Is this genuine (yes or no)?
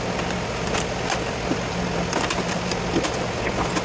yes